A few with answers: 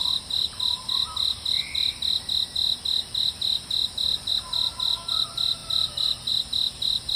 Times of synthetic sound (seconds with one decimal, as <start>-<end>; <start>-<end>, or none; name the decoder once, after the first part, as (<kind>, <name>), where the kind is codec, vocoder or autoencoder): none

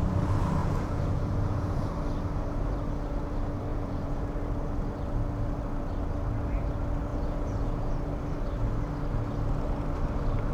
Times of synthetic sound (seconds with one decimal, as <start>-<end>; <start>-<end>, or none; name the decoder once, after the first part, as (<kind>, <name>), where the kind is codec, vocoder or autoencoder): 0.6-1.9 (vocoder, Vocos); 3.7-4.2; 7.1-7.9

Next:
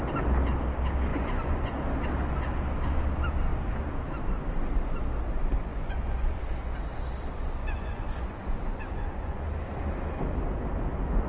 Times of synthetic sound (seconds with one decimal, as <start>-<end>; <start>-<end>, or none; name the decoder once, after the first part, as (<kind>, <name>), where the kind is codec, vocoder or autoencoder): 1.1-1.7 (vocoder, Vocos); 5.7-6.4; 7.6-9.4

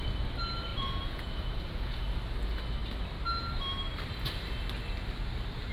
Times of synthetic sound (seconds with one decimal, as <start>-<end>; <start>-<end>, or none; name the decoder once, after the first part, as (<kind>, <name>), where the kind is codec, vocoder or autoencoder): 0.7-2.0 (vocoder, Vocos)

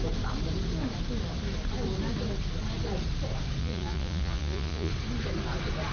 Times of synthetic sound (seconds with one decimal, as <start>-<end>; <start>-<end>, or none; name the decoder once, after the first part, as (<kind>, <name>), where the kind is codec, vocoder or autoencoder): 3.6-4.9 (vocoder, Vocos)